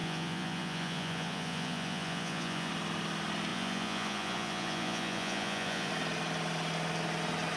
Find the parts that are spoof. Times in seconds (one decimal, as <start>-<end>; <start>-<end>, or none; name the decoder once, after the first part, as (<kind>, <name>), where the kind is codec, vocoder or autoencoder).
0.0-2.7 (vocoder, Vocos); 3.5-5.9